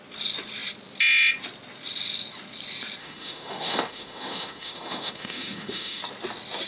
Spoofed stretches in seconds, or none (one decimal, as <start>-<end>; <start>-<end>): 3.0-6.0